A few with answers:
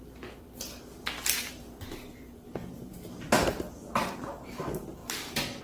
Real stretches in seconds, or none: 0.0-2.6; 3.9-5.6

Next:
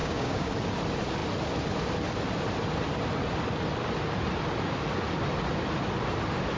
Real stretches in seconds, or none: 0.5-6.6

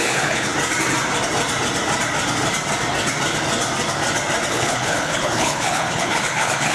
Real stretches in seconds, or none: 0.5-4.5

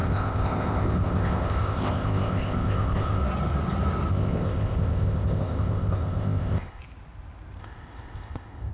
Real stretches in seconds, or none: 3.2-4.1; 6.8-7.6

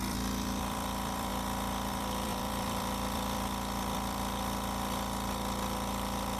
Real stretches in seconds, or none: 1.3-1.9

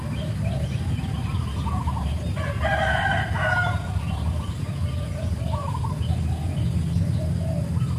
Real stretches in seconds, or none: 0.0-8.0